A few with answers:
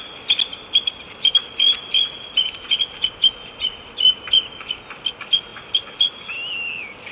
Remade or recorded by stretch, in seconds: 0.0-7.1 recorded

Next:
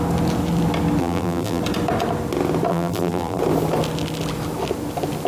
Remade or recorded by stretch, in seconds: 0.0-1.0 recorded; 1.0-1.6 remade; 1.6-2.7 recorded; 2.7-3.4 remade; 3.4-5.3 recorded